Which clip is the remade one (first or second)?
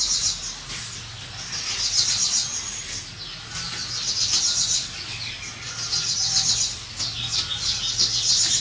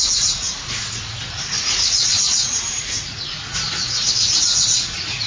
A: second